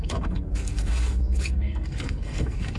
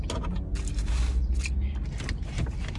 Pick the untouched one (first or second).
second